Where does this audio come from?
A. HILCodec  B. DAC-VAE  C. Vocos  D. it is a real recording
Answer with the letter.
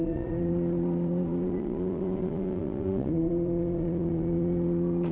C